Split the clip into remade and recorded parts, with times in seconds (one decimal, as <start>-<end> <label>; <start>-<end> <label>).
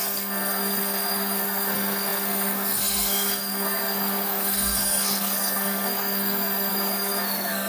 0.0-7.7 remade